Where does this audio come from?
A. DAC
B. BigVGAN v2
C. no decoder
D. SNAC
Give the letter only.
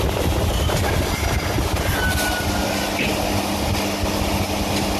C